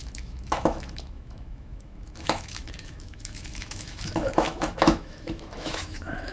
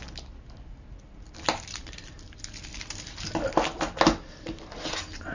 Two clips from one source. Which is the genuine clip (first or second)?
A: second